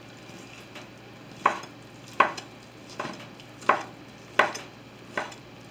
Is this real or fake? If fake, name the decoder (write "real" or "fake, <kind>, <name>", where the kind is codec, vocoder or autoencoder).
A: real